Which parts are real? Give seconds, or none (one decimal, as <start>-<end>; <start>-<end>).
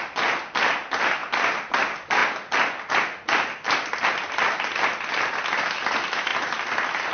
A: 0.0-7.1